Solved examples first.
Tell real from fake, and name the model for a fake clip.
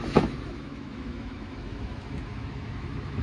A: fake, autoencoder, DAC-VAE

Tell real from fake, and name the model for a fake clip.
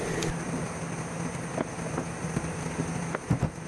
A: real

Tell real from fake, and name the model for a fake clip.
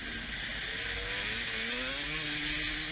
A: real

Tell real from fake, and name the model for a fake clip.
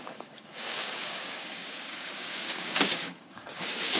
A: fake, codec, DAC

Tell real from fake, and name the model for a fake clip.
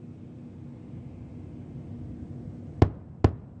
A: real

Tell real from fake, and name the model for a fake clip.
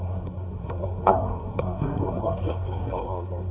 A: fake, codec, SNAC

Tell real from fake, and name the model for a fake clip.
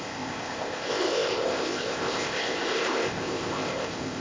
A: fake, codec, ZipCodec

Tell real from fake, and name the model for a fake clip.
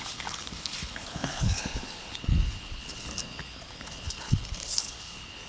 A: fake, codec, HILCodec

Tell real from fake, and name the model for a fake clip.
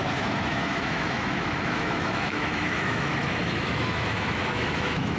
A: fake, autoencoder, DAC-VAE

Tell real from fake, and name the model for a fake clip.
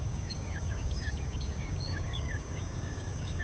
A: fake, codec, DAC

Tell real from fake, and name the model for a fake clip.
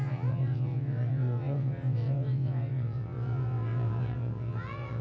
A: fake, vocoder, WaveNeXt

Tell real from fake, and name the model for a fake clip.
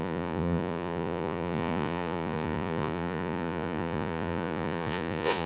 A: fake, vocoder, Vocos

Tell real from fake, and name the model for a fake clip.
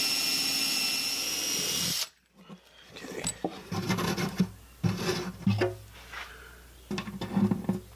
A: real